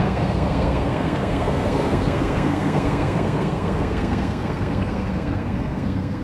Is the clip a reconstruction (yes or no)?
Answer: yes